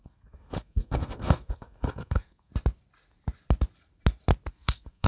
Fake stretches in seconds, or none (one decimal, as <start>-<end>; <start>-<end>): 0.0-2.5; 4.5-5.1